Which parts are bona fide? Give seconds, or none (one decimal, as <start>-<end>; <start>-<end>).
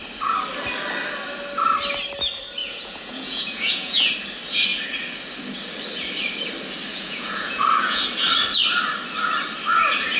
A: 0.0-2.6; 4.1-6.9; 8.0-10.2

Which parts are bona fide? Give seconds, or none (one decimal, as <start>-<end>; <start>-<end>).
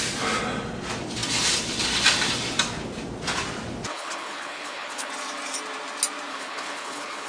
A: 0.0-3.9; 5.1-6.3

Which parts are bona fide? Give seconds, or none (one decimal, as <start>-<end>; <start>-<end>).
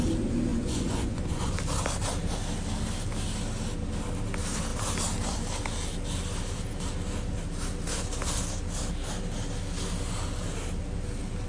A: 0.0-0.5; 1.5-11.5